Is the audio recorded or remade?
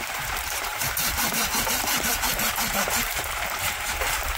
remade